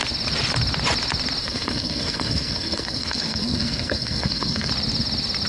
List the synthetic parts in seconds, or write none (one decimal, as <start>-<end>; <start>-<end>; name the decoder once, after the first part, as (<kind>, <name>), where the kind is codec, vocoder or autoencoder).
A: 1.4-4.7 (codec, SNAC)